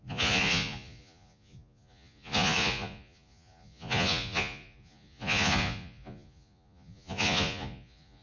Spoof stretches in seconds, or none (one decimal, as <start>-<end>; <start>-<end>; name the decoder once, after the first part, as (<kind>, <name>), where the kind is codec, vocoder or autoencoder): 0.0-8.2 (vocoder, Vocos)